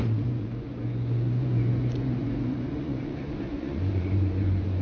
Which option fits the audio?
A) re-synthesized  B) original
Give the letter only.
A